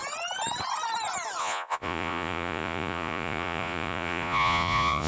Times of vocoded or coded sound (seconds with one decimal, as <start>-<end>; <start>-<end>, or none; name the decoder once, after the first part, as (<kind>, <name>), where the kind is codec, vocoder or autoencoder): 1.4-5.1 (vocoder, Vocos)